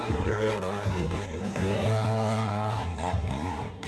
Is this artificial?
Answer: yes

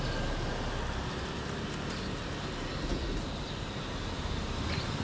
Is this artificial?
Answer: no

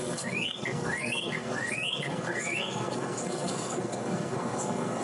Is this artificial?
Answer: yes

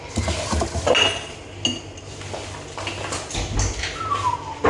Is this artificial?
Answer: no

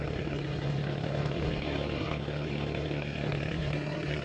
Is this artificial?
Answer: yes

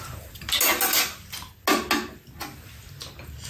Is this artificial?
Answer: no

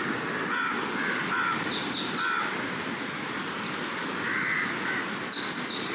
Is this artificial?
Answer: no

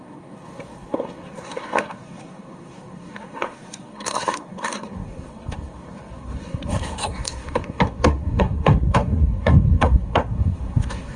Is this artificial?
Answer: yes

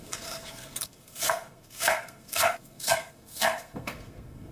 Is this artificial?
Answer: yes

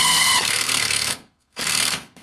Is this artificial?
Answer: yes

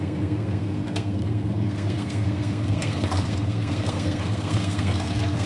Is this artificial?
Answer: yes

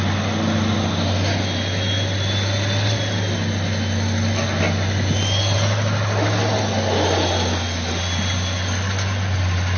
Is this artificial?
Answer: no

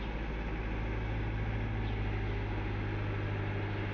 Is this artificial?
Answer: no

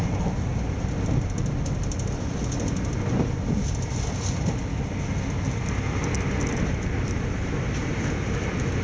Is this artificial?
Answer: no